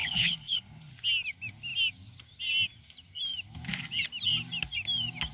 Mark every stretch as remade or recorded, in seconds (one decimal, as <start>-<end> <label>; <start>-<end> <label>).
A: 0.0-0.9 remade; 0.9-5.3 recorded